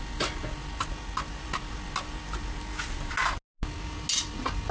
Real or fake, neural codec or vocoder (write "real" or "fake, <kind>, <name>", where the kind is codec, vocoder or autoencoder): real